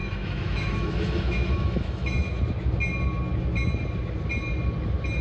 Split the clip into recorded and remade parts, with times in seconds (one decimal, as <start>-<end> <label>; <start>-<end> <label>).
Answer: 0.0-2.4 remade; 2.4-5.2 recorded